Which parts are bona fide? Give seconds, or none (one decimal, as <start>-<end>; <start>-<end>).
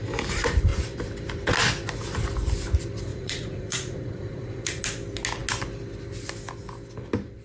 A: 0.0-3.1; 4.8-7.4